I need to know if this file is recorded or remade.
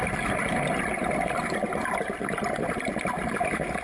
recorded